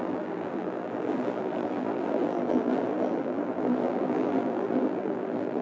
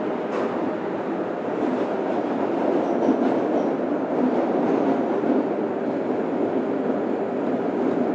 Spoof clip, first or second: first